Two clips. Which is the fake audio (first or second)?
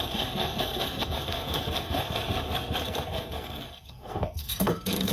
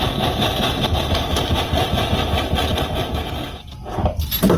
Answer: first